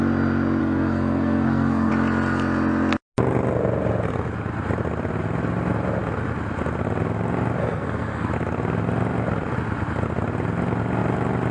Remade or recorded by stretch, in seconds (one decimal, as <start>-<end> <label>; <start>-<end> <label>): 0.0-0.6 recorded; 0.6-1.9 remade; 1.9-7.6 recorded; 7.6-8.3 remade; 8.3-11.5 recorded

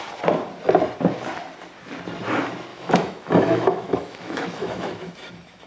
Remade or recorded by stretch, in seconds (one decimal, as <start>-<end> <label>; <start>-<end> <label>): 0.0-2.7 recorded; 2.7-5.7 remade

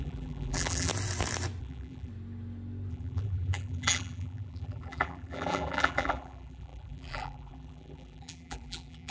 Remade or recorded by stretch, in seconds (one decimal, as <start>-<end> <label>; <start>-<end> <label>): 0.0-0.9 remade; 0.9-1.6 recorded; 1.6-2.1 remade; 2.1-2.9 recorded; 2.9-9.1 remade